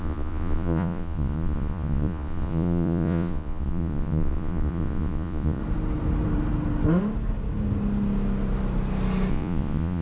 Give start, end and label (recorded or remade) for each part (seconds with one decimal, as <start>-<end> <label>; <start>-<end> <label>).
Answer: 0.0-5.6 remade; 5.6-9.3 recorded; 9.3-10.0 remade